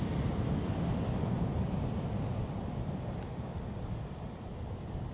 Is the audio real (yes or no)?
yes